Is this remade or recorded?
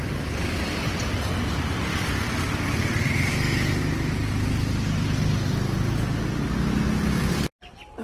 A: recorded